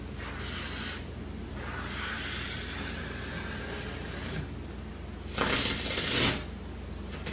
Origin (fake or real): real